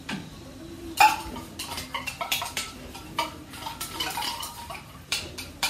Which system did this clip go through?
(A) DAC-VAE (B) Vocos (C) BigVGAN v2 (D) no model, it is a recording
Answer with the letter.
C